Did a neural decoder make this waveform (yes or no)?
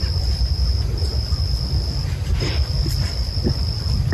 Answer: no